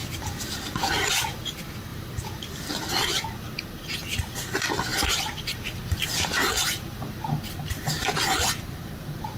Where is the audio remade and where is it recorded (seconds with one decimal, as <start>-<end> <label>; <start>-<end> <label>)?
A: 0.0-9.4 remade